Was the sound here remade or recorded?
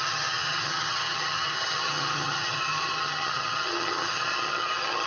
remade